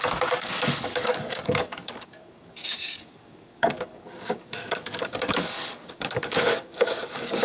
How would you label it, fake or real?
fake